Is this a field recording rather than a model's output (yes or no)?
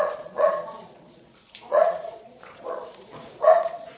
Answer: no